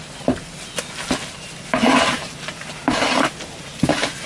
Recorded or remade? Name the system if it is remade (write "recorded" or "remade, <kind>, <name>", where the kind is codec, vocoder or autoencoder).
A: recorded